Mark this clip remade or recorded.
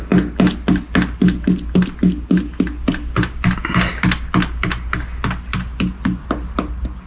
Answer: recorded